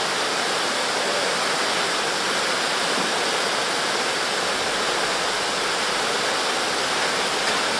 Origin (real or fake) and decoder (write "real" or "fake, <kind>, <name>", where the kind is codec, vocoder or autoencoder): real